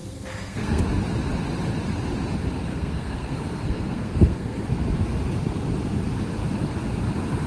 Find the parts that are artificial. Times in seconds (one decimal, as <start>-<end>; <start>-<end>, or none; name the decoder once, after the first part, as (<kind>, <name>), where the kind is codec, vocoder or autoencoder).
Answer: 0.0-0.8 (codec, SNAC); 2.7-4.6